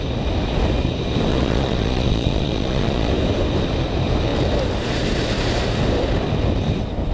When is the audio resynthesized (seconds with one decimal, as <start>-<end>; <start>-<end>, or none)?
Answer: 1.3-3.1